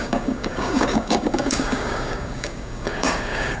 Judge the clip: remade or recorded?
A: remade